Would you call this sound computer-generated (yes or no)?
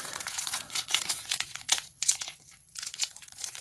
yes